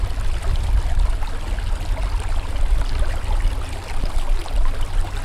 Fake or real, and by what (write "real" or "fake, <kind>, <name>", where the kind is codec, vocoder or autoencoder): real